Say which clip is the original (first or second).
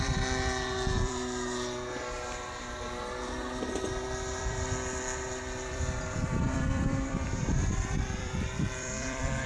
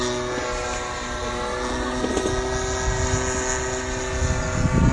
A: second